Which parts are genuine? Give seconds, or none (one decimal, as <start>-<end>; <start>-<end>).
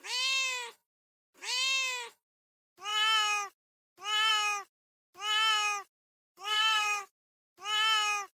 0.0-6.0; 7.5-8.4